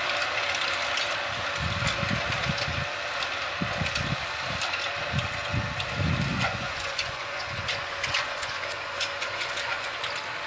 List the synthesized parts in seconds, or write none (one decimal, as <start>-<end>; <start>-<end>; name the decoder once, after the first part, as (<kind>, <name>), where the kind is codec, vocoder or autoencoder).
6.3-10.0 (vocoder, Vocos)